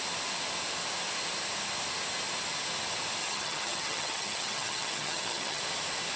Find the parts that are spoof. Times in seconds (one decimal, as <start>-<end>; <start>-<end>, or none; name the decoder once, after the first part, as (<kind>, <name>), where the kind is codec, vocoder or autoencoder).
3.2-5.6 (vocoder, HiFi-GAN)